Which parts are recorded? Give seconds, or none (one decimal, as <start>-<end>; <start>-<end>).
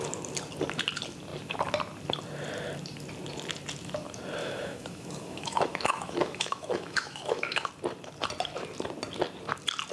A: 0.0-4.4; 7.7-9.9